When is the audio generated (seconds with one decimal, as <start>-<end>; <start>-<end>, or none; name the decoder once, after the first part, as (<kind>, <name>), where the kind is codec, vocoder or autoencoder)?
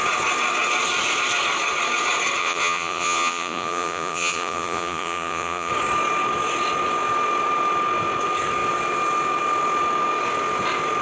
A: 2.4-5.7 (vocoder, Vocos)